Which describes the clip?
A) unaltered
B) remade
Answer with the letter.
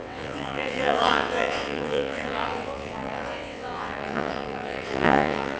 B